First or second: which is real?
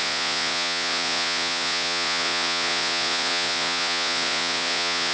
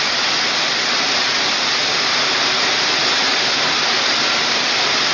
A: second